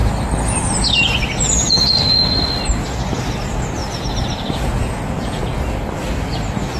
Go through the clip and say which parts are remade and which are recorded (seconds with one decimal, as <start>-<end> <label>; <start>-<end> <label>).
0.0-3.8 recorded; 3.8-5.6 remade; 5.6-6.8 recorded